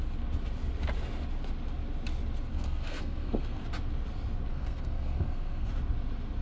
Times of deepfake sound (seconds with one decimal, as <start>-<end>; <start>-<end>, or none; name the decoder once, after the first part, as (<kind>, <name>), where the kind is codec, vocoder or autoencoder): 2.5-3.6 (codec, SNAC); 4.5-5.7